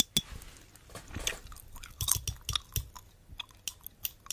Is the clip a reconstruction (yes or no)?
no